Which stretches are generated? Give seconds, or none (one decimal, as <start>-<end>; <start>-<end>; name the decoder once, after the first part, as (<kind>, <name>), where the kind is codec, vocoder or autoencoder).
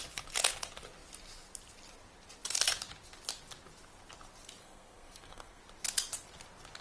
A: 4.6-5.6 (codec, SNAC)